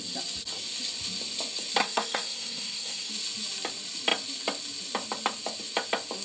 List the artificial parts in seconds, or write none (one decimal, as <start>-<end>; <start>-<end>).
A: 1.8-3.1